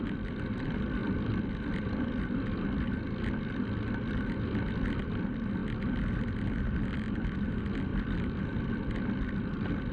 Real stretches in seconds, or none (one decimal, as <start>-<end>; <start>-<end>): 0.0-1.0; 1.6-5.6; 6.3-7.9; 8.4-9.9